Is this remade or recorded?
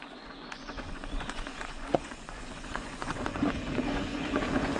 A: remade